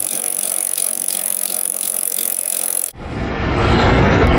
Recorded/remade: remade